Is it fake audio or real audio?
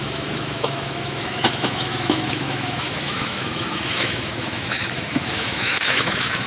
fake